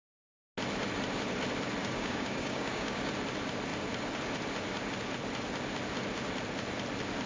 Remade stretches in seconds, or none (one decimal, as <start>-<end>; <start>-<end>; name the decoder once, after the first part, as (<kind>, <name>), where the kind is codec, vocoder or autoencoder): 1.8-3.1 (codec, DAC)